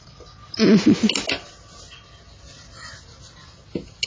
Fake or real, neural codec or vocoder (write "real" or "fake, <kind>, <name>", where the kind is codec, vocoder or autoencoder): real